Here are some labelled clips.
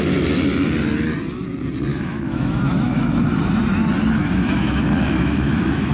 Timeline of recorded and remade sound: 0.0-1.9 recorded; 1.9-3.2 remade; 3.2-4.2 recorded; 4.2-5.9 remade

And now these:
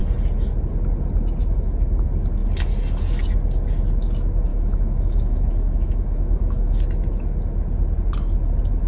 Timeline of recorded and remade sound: 0.0-4.5 recorded; 4.5-6.8 remade; 6.8-8.9 recorded

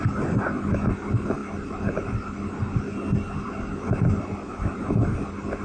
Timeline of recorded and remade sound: 0.0-5.6 recorded

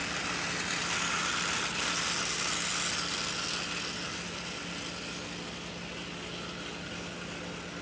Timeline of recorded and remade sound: 0.0-7.8 recorded